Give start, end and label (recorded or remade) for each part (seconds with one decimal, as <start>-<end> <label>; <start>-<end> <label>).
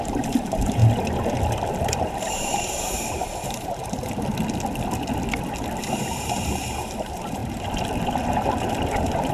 0.0-0.8 remade; 0.8-1.7 recorded; 1.7-4.3 remade; 4.3-6.1 recorded; 6.1-7.4 remade; 7.4-8.9 recorded; 8.9-9.3 remade